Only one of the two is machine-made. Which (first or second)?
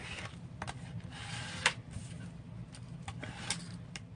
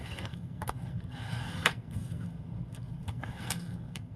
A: second